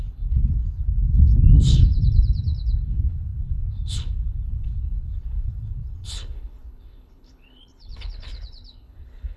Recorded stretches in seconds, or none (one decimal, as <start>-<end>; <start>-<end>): none